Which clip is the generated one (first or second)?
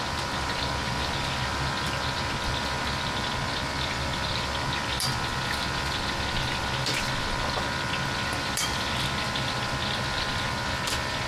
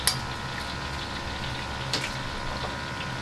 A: first